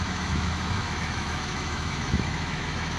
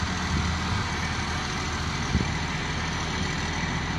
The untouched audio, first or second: second